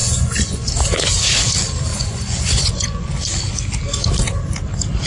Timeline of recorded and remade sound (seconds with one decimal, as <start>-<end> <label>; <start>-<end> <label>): 0.0-0.7 remade; 0.7-1.9 recorded; 1.9-3.1 remade; 3.1-5.1 recorded